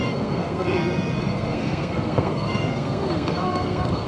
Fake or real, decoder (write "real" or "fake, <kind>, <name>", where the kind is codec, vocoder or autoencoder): fake, codec, SNAC